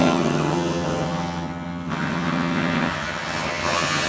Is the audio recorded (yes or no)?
no